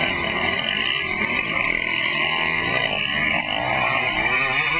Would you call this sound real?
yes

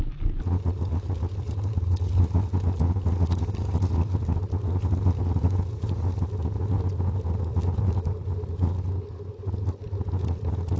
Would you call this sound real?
yes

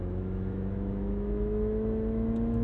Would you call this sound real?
no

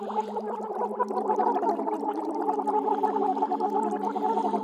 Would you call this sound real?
yes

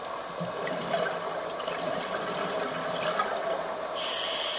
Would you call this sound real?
yes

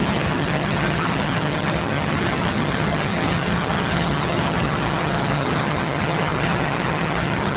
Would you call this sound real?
no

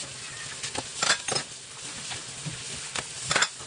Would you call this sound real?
yes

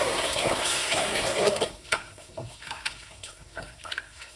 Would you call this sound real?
no